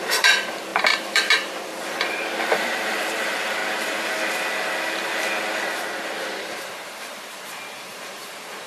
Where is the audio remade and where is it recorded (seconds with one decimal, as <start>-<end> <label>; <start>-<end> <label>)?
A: 0.0-3.6 remade; 3.6-6.4 recorded; 6.4-8.7 remade